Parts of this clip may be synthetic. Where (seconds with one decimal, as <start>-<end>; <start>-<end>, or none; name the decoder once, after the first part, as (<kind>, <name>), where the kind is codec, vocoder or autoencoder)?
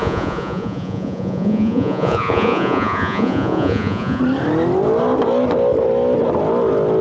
0.0-4.2 (vocoder, Vocos)